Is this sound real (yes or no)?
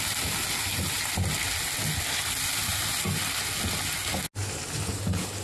yes